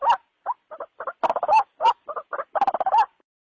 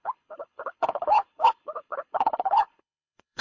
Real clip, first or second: first